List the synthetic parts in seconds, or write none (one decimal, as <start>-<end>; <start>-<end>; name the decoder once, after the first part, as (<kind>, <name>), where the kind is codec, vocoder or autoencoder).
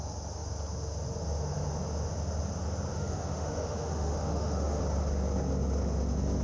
2.9-4.8 (autoencoder, DAC-VAE)